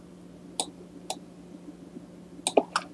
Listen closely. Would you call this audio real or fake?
real